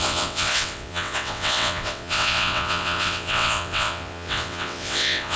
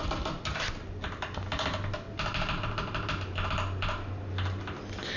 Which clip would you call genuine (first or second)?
second